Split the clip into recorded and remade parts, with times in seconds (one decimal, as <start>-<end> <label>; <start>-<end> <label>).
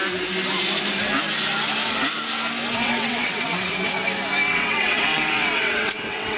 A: 0.0-2.7 recorded; 2.7-4.0 remade; 4.0-4.5 recorded; 4.5-6.4 remade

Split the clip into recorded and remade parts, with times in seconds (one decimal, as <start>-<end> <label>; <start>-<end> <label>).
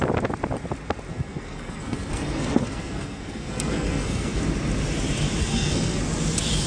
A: 0.0-1.1 recorded; 1.1-4.4 remade; 4.4-5.4 recorded; 5.4-6.0 remade; 6.0-6.7 recorded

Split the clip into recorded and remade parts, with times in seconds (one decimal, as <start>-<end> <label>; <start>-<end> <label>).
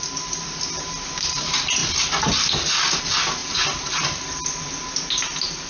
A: 0.0-5.7 recorded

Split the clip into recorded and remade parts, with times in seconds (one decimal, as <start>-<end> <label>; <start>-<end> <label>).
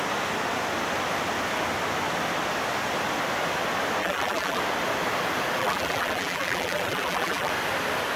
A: 0.0-4.0 recorded; 4.0-4.6 remade; 4.6-5.6 recorded; 5.6-7.5 remade; 7.5-8.2 recorded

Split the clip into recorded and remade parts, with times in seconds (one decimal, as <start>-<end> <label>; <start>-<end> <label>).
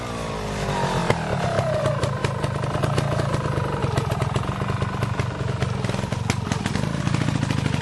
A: 0.0-7.8 recorded